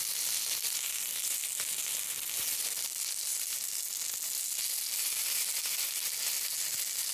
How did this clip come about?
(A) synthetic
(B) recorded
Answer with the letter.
B